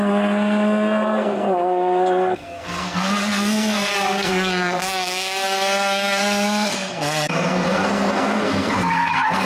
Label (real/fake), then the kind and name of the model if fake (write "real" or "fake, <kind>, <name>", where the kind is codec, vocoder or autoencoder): fake, codec, SNAC